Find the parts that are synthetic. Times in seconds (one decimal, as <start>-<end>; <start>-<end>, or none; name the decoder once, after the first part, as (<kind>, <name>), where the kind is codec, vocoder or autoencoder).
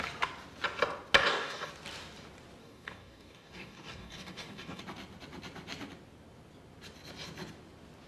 1.2-1.7 (codec, DAC); 2.6-4.8